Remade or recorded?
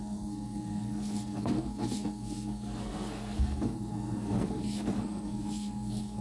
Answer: remade